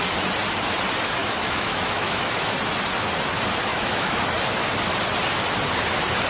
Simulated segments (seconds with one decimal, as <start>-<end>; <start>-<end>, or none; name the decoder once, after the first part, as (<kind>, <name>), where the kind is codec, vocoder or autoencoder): 1.2-2.5 (autoencoder, DAC-VAE); 3.7-4.2

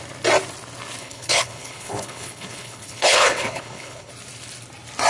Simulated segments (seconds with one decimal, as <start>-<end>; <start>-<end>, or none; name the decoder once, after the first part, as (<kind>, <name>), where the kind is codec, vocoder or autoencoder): 1.0-4.1 (codec, HILCodec)

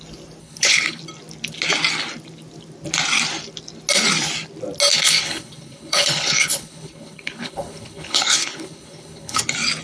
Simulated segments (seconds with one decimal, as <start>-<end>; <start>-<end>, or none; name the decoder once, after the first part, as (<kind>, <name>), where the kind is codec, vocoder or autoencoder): 0.4-1.0 (codec, HILCodec); 4.9-9.4

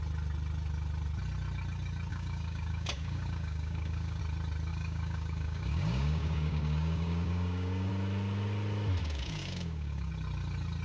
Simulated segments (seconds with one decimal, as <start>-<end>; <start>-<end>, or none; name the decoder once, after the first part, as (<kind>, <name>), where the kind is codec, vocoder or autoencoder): 2.1-4.2 (codec, DAC); 4.7-7.9; 9.0-10.1

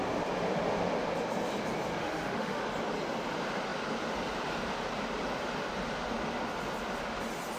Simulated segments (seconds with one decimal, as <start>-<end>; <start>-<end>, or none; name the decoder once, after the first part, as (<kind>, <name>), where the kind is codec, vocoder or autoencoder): 2.0-2.6 (autoencoder, DAC-VAE)